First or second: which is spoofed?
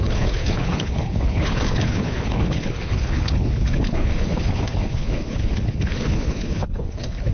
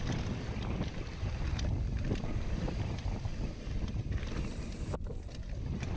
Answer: first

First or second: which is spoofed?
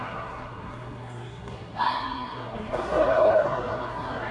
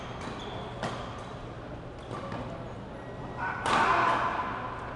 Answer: first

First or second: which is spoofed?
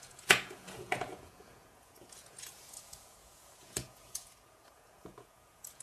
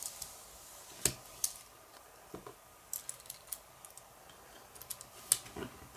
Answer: first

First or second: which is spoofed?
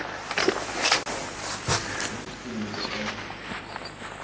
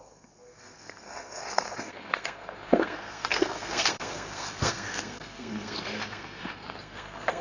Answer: second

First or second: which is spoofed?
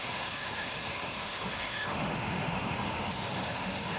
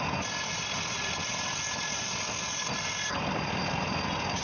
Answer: first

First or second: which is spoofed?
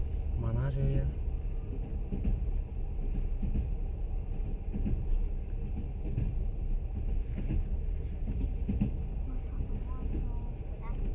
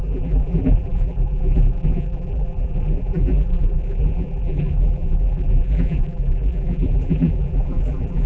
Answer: second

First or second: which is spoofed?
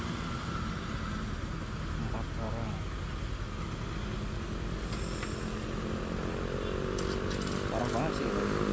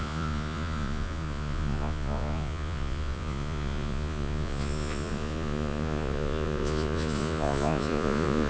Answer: second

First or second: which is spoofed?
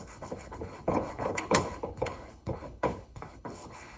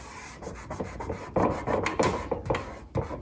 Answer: first